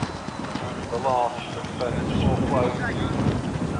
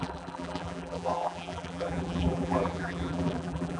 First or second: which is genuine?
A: first